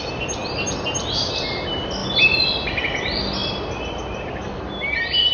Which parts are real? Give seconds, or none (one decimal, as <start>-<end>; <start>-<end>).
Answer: 0.0-5.3